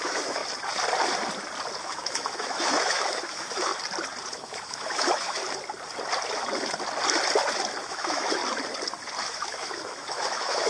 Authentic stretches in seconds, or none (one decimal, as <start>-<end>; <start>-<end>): 0.4-1.8; 3.7-4.3; 5.4-7.8; 8.4-9.2